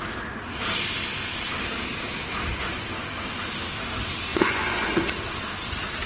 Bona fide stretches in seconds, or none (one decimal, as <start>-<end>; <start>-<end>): 0.0-4.3; 5.1-6.1